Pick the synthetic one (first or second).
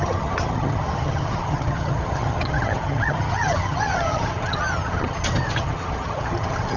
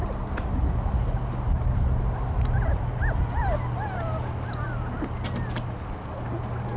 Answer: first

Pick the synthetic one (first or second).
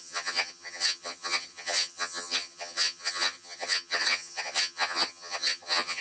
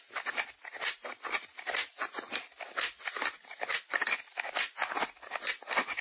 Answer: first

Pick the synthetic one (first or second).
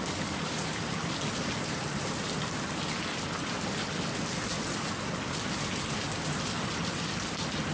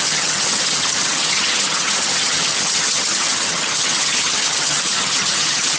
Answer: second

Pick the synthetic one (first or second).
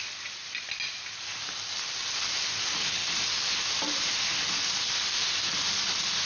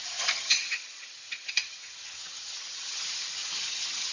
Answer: second